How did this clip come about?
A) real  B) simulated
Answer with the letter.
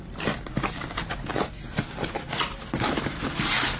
A